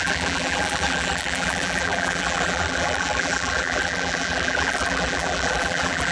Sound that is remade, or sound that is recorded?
remade